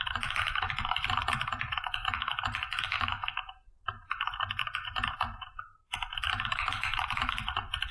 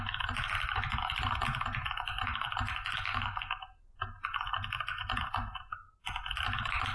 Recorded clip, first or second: second